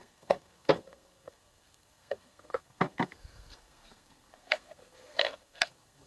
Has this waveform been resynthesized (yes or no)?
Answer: yes